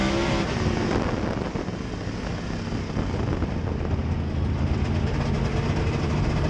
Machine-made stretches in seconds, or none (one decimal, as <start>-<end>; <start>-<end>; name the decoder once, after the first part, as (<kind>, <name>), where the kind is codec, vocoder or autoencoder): 4.0-5.2 (vocoder, BigVGAN v2)